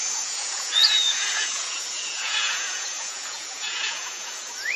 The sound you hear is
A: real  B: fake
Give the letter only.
B